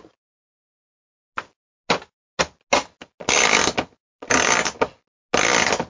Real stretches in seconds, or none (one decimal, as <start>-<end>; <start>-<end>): 0.0-5.9